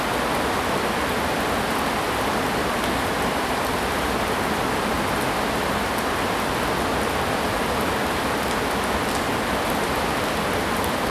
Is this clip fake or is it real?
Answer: real